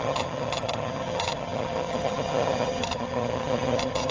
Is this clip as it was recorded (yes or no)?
no